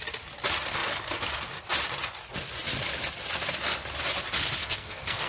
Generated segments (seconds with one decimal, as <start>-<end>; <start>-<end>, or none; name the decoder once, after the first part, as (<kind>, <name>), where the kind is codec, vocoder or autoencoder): 4.6-5.3 (codec, SNAC)